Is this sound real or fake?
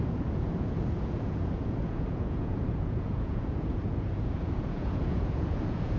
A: fake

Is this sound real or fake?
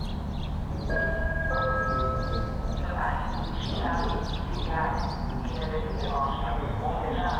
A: real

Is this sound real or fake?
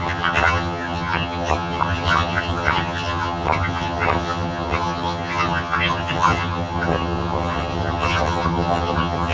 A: fake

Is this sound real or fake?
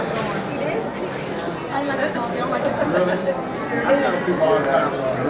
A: real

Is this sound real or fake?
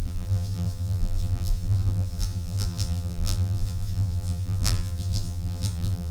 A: fake